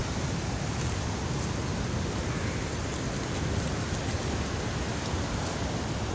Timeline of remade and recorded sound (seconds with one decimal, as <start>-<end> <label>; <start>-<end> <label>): 0.0-6.1 recorded